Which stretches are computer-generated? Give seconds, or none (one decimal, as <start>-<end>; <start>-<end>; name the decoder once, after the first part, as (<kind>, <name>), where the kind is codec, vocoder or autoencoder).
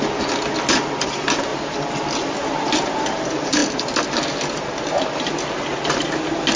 none